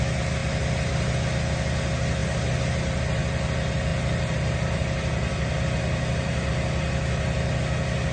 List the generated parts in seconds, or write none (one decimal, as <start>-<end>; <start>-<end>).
2.2-3.2; 3.9-6.5